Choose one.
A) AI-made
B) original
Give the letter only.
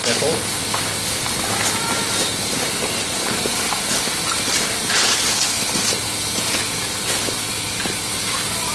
B